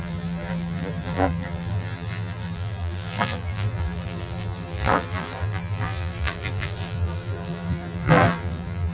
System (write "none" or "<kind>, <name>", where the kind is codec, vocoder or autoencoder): vocoder, BigVGAN v2